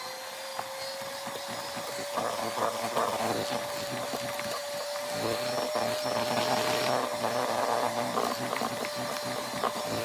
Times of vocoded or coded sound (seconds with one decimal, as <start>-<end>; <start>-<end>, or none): none